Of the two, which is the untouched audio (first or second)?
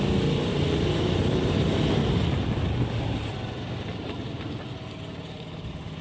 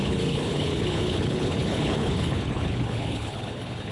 first